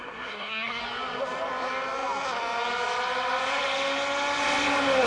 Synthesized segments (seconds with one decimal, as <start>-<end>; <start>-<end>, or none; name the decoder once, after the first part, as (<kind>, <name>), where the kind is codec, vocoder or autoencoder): 0.0-0.8 (codec, SNAC)